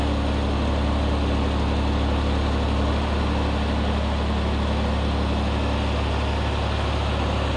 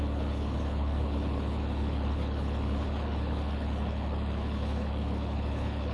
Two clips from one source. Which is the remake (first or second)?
second